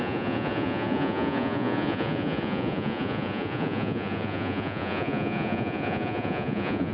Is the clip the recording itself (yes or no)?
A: no